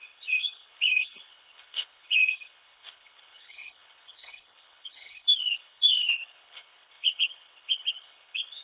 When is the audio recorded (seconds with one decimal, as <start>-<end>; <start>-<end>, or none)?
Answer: none